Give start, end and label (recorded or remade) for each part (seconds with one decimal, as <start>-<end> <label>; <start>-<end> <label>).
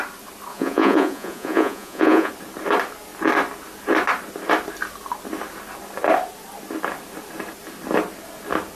0.0-0.5 recorded; 0.5-2.3 remade; 2.3-8.8 recorded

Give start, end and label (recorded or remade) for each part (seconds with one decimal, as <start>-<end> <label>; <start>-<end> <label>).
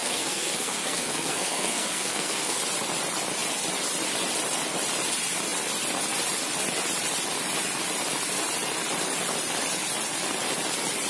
0.0-2.6 remade; 2.6-11.1 recorded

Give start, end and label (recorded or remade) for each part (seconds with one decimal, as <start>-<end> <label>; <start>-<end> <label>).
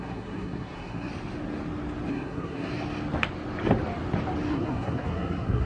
0.0-1.1 remade; 1.1-2.1 recorded; 2.1-2.7 remade; 2.7-4.5 recorded; 4.5-5.7 remade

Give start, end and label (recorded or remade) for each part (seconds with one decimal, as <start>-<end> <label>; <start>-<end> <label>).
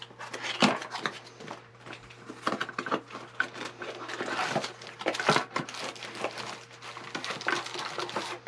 0.0-8.5 recorded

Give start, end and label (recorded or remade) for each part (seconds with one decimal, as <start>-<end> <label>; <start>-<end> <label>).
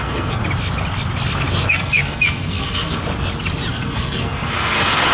0.0-0.4 remade; 0.4-1.7 recorded; 1.7-3.0 remade; 3.0-3.7 recorded; 3.7-5.1 remade